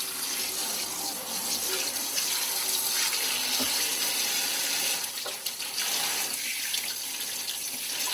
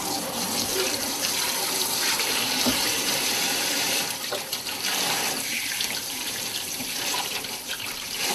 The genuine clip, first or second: first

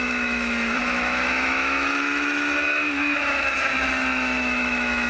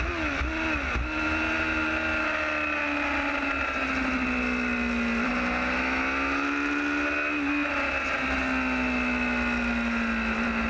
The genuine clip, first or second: second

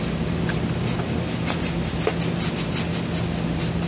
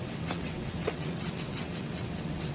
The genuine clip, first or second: first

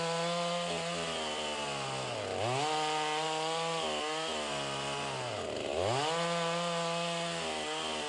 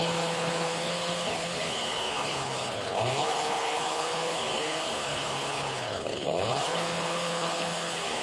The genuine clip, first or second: first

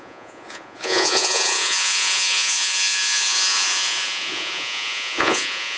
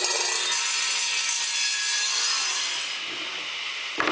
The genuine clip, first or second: second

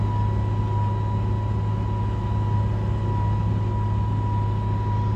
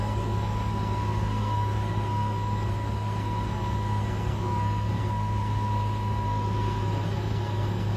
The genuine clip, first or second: first